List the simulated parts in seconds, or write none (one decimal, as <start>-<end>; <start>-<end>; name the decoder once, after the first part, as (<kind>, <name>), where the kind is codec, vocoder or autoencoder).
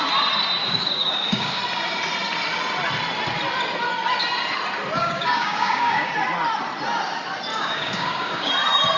0.6-1.6 (codec, DAC); 5.0-6.1; 7.5-8.5